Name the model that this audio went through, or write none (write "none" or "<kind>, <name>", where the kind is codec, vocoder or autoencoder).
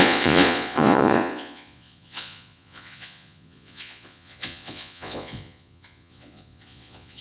vocoder, Vocos